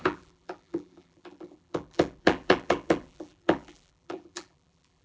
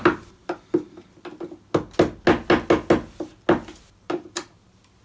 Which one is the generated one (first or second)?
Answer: first